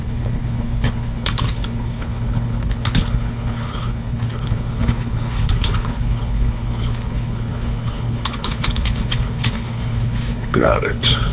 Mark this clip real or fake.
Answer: fake